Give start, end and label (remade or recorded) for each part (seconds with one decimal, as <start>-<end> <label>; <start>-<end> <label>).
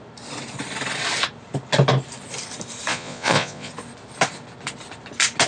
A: 0.0-2.9 recorded; 2.9-3.7 remade; 3.7-5.5 recorded